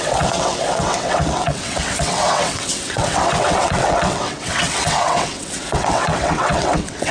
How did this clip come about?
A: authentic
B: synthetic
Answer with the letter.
B